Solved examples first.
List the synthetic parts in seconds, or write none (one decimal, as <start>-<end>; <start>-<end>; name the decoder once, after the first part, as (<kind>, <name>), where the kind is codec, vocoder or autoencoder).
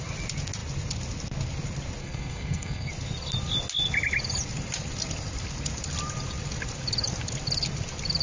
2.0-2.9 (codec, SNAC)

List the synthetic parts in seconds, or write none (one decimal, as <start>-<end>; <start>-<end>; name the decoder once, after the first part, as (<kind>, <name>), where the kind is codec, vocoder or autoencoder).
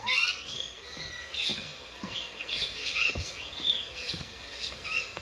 0.0-5.2 (codec, SNAC)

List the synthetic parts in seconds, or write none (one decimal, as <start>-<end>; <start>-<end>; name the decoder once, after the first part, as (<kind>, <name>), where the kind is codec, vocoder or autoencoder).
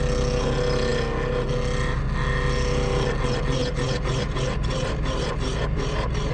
none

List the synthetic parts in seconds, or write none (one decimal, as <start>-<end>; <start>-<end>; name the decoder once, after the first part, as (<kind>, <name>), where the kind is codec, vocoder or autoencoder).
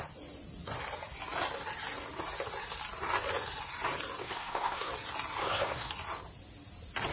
4.2-4.9 (codec, SNAC); 5.4-5.9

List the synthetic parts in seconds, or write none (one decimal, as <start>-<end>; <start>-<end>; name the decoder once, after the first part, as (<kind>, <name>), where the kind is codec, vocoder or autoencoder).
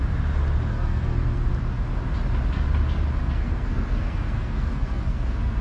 0.7-1.5 (codec, SNAC); 3.2-5.6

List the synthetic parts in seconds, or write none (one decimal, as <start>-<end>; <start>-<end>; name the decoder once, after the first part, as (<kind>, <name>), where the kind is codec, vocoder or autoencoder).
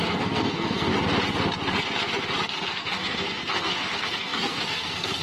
0.0-0.9 (codec, SNAC); 2.5-5.2